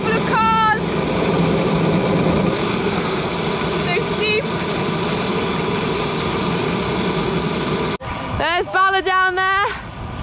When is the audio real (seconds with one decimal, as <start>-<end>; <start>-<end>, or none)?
0.0-2.7; 3.3-10.2